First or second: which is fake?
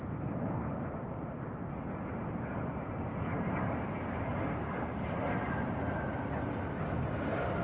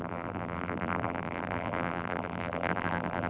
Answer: second